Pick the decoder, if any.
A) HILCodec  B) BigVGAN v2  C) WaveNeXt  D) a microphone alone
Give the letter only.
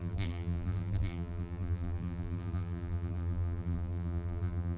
B